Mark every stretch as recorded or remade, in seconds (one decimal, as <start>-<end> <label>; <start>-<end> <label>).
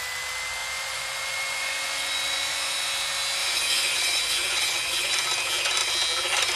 0.0-0.6 recorded; 0.6-2.9 remade; 2.9-3.4 recorded; 3.4-5.1 remade; 5.1-6.6 recorded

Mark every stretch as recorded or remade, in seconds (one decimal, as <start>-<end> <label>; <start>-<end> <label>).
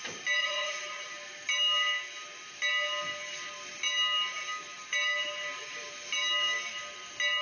0.0-0.4 recorded; 0.4-1.1 remade; 1.1-7.4 recorded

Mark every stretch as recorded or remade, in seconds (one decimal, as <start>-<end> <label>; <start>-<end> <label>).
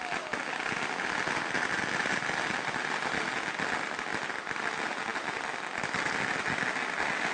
0.0-7.3 recorded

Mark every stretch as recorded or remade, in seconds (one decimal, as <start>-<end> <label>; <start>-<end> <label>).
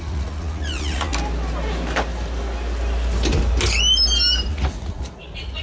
0.0-1.1 remade; 1.1-4.5 recorded; 4.5-5.6 remade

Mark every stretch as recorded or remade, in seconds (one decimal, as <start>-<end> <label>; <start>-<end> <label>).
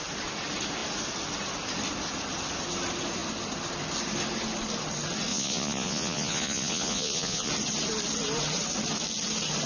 0.0-5.3 recorded; 5.3-7.5 remade; 7.5-9.7 recorded